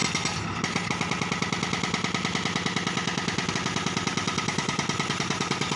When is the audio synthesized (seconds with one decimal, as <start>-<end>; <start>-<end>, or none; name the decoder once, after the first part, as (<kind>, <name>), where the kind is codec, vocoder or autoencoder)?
none

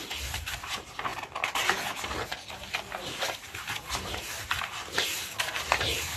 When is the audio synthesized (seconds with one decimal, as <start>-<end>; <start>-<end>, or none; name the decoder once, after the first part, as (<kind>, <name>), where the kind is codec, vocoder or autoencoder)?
none

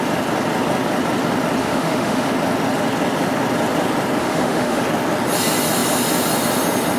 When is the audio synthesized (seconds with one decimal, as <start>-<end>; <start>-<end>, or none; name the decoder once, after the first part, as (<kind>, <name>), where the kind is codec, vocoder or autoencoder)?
1.6-2.3 (autoencoder, DAC-VAE); 4.2-4.8

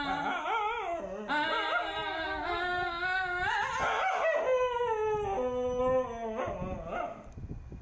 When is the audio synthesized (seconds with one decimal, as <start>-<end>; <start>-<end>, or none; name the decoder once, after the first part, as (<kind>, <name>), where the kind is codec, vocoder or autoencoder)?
none

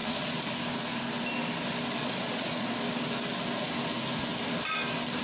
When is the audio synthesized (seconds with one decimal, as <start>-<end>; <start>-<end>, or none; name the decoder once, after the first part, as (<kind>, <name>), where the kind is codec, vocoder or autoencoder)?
2.0-2.8 (vocoder, Vocos)

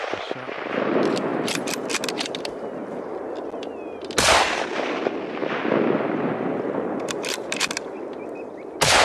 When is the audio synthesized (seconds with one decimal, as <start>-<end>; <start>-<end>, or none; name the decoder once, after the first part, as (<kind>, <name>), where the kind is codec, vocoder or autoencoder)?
none

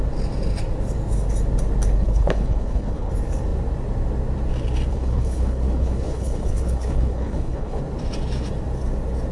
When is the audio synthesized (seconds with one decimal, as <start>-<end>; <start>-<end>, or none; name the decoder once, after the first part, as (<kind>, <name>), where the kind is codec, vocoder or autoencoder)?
2.0-3.1 (codec, HILCodec); 4.9-7.8